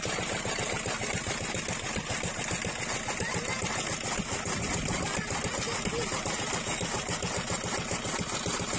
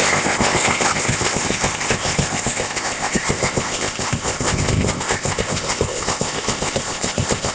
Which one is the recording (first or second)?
first